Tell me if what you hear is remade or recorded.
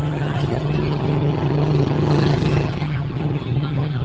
remade